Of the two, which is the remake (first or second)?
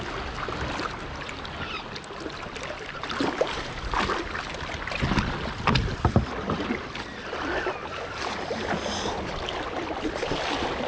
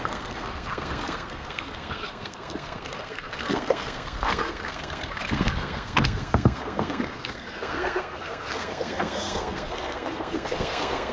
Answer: second